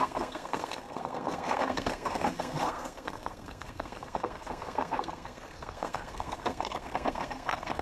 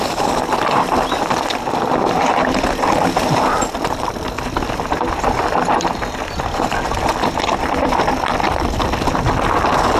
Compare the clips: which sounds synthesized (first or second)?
first